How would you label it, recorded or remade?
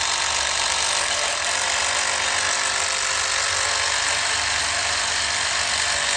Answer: recorded